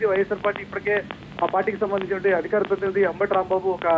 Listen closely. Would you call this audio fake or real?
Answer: real